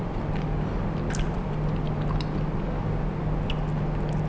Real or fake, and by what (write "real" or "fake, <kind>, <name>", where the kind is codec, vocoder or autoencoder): real